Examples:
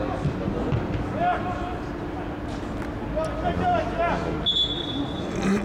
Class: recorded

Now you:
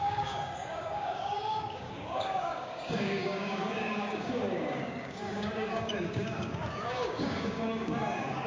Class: remade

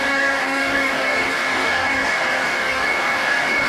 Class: remade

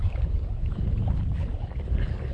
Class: remade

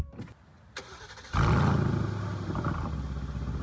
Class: recorded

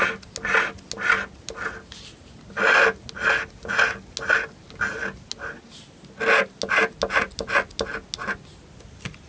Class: recorded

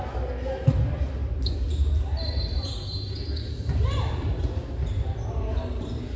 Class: recorded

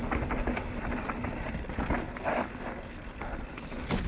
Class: recorded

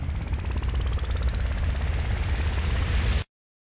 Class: recorded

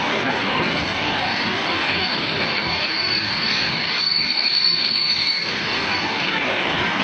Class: remade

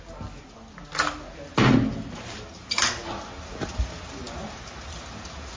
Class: recorded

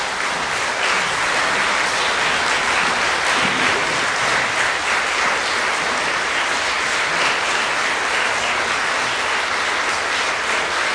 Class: recorded